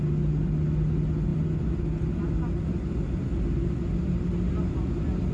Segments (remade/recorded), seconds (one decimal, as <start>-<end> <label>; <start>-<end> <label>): 0.0-5.3 recorded

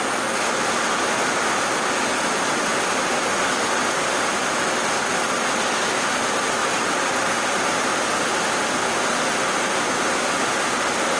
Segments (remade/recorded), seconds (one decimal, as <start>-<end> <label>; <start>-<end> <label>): 0.0-11.2 recorded

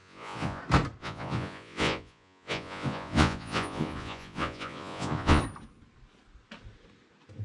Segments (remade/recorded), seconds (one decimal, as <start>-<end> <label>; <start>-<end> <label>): 0.0-0.6 remade; 0.6-1.0 recorded; 1.0-5.4 remade; 5.4-7.4 recorded

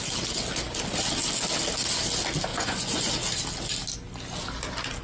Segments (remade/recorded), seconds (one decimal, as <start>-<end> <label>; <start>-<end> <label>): 0.0-2.5 recorded; 2.5-3.1 remade; 3.1-5.0 recorded

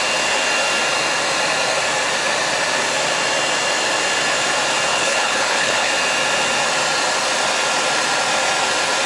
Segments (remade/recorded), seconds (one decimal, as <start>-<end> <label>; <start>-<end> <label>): 0.0-4.9 recorded; 4.9-5.9 remade; 5.9-9.1 recorded